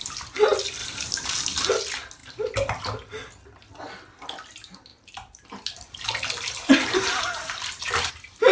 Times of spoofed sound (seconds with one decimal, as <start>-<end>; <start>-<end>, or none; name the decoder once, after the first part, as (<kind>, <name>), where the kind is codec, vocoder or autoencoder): 0.8-1.7 (vocoder, BigVGAN v2); 4.9-8.1